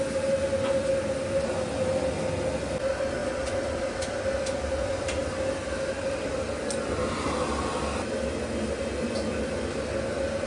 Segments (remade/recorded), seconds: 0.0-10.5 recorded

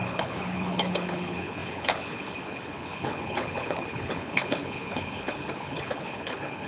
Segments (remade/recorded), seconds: 0.0-6.7 remade

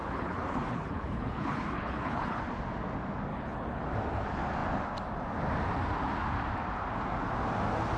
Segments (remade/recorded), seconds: 0.0-2.4 remade; 2.4-3.3 recorded; 3.3-3.8 remade; 3.8-8.0 recorded

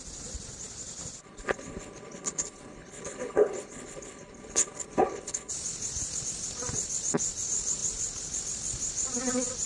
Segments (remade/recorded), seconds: 0.0-1.2 recorded; 1.2-5.5 remade; 5.5-9.7 recorded

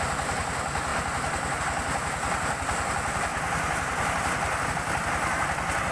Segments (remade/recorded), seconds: 0.0-5.9 recorded

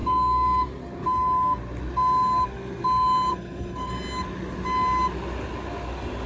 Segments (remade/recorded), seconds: 0.0-3.3 recorded; 3.3-3.9 remade; 3.9-6.3 recorded

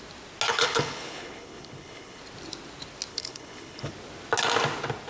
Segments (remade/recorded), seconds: 0.0-0.5 recorded; 0.5-2.2 remade; 2.2-3.1 recorded; 3.1-3.9 remade; 3.9-5.1 recorded

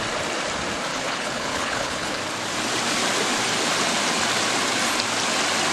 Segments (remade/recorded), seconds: 0.0-0.9 recorded; 0.9-2.2 remade; 2.2-5.7 recorded